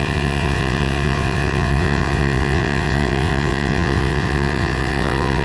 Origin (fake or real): fake